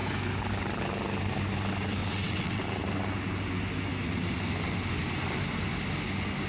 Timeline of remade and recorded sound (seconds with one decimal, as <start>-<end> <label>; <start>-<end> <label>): 0.0-2.0 recorded; 2.0-2.6 remade; 2.6-6.5 recorded

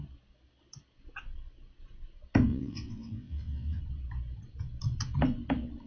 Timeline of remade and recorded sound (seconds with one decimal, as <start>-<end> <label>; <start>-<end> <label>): 0.0-2.5 recorded; 2.5-3.8 remade; 3.8-5.9 recorded

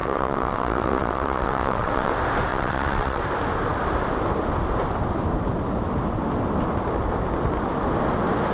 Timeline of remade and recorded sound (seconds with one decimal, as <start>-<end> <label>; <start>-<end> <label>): 0.0-2.1 remade; 2.1-2.5 recorded; 2.5-3.2 remade; 3.2-8.5 recorded

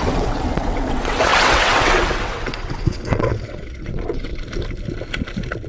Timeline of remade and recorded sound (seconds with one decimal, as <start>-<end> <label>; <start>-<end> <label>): 0.0-4.3 remade; 4.3-5.7 recorded

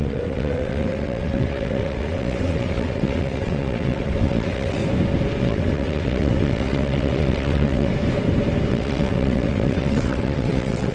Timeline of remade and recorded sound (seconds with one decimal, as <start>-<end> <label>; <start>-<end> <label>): 0.0-4.8 remade; 4.8-5.4 recorded; 5.4-7.9 remade; 7.9-8.7 recorded; 8.7-10.9 remade

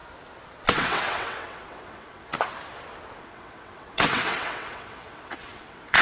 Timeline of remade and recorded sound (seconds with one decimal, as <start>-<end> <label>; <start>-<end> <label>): 0.0-0.7 recorded; 0.7-2.3 remade; 2.3-3.2 recorded; 3.2-6.0 remade